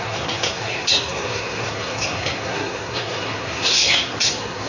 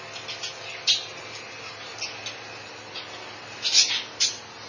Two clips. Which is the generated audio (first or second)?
first